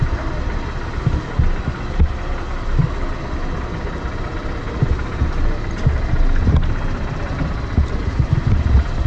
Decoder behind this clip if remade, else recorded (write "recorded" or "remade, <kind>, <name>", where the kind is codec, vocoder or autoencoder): recorded